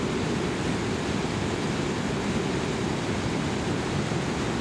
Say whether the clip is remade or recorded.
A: recorded